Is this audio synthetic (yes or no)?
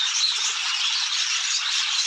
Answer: yes